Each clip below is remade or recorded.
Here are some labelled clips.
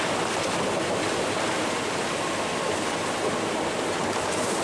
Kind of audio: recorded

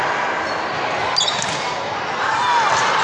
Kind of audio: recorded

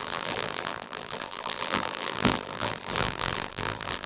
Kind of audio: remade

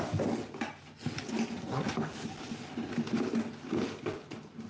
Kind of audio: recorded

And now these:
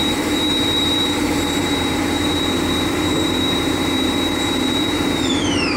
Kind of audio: remade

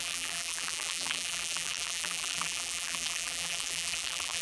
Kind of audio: remade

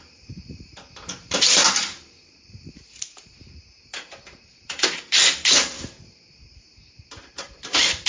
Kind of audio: remade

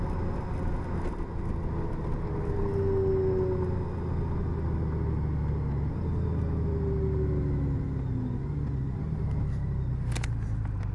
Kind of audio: recorded